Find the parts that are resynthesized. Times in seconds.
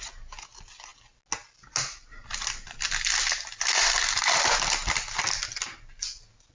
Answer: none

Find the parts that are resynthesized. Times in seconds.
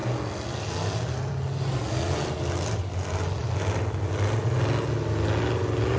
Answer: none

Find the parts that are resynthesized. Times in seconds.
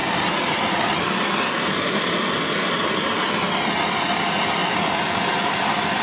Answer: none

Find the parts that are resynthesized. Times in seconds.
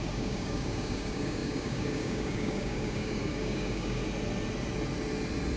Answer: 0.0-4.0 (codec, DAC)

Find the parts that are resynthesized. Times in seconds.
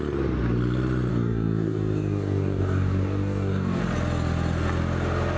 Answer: 1.1-3.8 (codec, DAC)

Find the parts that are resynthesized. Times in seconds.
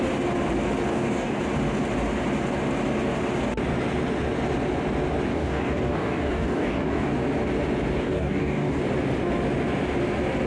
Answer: 0.9-1.4 (codec, DAC); 5.3-7.1; 8.0-8.8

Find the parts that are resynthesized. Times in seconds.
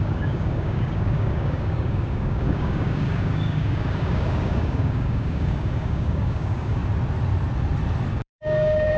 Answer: 0.0-6.8 (codec, DAC); 8.1-9.0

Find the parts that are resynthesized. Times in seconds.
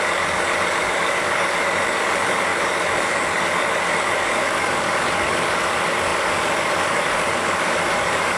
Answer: 0.0-8.4 (codec, DAC)